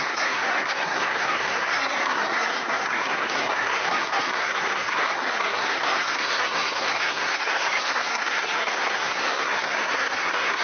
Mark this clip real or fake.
fake